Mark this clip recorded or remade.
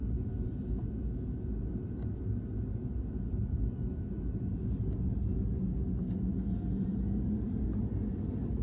recorded